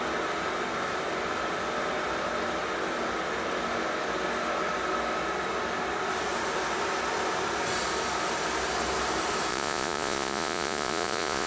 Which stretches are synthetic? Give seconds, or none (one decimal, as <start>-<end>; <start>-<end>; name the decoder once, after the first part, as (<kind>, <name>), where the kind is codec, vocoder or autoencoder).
9.5-11.5 (vocoder, Vocos)